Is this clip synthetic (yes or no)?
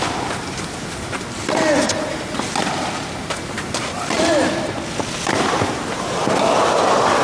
no